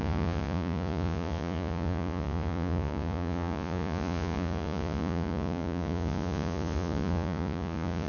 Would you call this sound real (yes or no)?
no